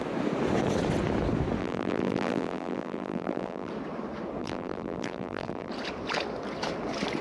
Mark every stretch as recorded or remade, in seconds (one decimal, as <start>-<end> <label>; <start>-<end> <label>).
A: 0.0-1.6 recorded; 1.6-3.7 remade; 3.7-4.4 recorded; 4.4-5.7 remade; 5.7-7.2 recorded